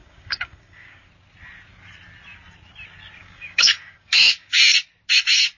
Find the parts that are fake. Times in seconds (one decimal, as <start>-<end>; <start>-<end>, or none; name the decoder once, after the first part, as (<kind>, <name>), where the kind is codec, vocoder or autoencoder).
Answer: 0.0-1.1 (codec, DAC); 3.2-4.6